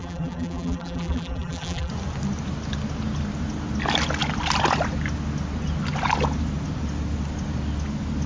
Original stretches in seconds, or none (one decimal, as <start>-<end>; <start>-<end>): 1.9-8.3